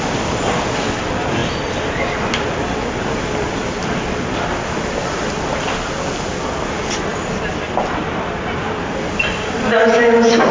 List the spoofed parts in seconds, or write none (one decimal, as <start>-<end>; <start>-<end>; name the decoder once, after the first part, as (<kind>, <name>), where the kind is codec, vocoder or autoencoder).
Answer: none